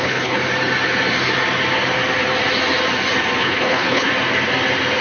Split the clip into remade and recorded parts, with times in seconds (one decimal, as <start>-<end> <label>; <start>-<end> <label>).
0.0-0.4 remade; 0.4-3.4 recorded; 3.4-4.1 remade; 4.1-5.0 recorded